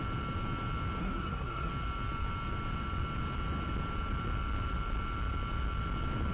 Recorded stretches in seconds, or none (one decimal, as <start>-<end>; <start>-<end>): 0.0-1.0; 1.7-6.3